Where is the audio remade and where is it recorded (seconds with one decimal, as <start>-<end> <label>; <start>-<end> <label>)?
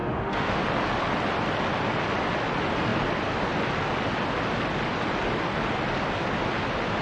0.0-0.6 remade; 0.6-7.0 recorded